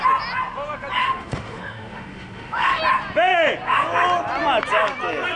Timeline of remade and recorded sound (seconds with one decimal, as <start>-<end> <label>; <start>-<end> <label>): 0.0-1.0 recorded; 1.0-2.8 remade; 2.8-5.4 recorded